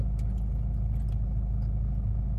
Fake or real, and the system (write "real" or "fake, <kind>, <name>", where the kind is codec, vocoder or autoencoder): real